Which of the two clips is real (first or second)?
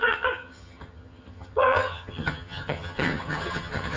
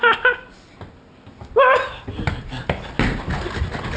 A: second